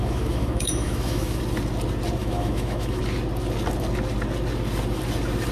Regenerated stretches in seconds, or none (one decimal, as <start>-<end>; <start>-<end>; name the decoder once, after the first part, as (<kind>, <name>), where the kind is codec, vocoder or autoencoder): 0.0-1.4 (autoencoder, DAC-VAE); 2.2-3.0